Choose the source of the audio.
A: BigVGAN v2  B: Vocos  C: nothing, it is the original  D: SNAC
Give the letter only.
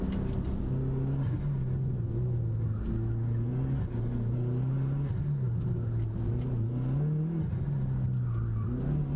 C